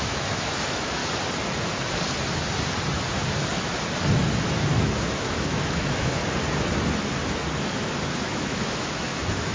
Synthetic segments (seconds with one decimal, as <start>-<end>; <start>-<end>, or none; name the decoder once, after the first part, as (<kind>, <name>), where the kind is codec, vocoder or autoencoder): 0.0-1.0 (autoencoder, DAC-VAE); 4.8-6.2; 8.2-9.5